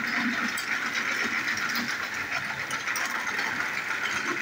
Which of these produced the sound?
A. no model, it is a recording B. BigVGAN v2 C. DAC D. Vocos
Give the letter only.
A